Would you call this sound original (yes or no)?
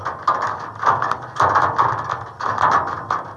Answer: yes